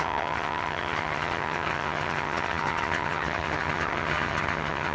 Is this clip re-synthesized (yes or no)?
yes